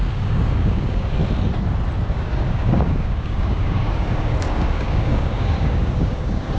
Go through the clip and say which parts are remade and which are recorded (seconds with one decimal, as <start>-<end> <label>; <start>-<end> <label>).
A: 0.0-1.2 remade; 1.2-2.1 recorded; 2.1-6.6 remade